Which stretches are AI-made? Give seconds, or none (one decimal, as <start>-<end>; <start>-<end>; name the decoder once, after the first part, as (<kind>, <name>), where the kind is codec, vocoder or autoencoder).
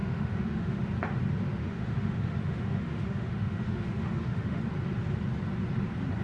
0.0-0.8 (autoencoder, DAC-VAE); 1.6-4.6